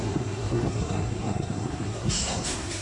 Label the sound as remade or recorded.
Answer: remade